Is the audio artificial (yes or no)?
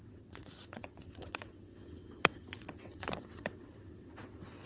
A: yes